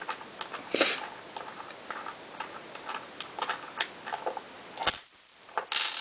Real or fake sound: real